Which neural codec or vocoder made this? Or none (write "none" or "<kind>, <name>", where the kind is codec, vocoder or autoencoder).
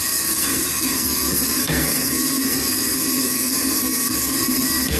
codec, SNAC